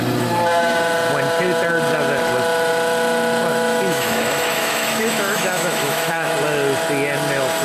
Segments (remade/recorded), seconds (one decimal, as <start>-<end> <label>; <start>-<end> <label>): 0.0-3.5 recorded; 3.5-6.3 remade; 6.3-7.6 recorded